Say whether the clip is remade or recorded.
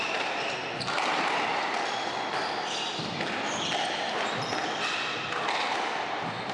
recorded